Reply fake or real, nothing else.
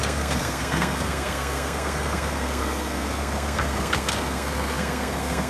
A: fake